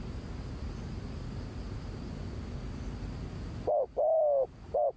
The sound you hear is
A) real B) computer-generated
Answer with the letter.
A